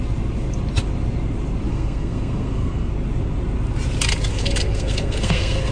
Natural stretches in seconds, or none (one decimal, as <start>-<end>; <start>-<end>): 0.0-1.7; 2.9-4.3